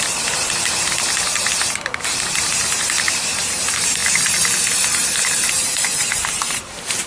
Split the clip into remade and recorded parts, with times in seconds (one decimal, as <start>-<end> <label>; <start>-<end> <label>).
0.0-4.0 remade; 4.0-4.6 recorded; 4.6-7.1 remade

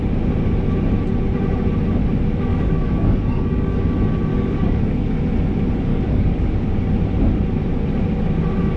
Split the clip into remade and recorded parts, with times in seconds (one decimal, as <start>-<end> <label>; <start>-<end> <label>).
0.0-2.5 recorded; 2.5-3.9 remade; 3.9-4.3 recorded; 4.3-5.2 remade; 5.2-5.9 recorded; 5.9-6.8 remade; 6.8-8.8 recorded